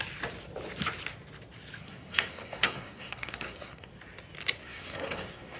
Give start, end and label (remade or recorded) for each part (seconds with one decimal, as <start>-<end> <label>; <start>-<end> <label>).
0.0-1.8 recorded; 1.8-3.9 remade; 3.9-4.6 recorded; 4.6-5.6 remade